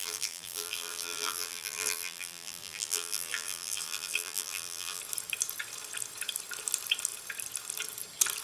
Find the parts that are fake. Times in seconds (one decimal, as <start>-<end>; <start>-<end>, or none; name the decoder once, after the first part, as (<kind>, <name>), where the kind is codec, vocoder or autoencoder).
0.0-5.0 (vocoder, BigVGAN v2)